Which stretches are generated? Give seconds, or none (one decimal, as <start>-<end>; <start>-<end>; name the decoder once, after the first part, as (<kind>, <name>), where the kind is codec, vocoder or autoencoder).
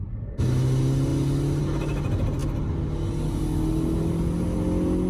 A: none